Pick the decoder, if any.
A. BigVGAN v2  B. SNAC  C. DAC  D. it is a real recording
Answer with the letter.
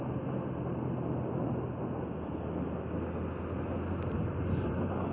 D